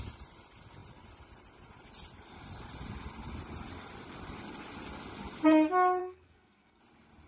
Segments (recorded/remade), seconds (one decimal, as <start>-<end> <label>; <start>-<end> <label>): 0.0-6.0 recorded; 6.0-6.8 remade; 6.8-7.3 recorded